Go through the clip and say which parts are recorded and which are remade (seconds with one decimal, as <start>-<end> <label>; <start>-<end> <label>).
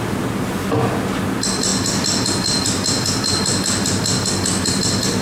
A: 0.0-5.2 recorded